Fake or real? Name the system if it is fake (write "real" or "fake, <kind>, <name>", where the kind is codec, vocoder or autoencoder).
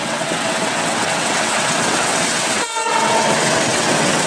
fake, vocoder, WaveNeXt